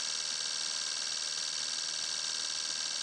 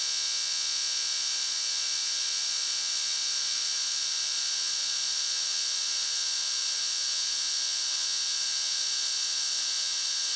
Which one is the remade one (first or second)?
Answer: second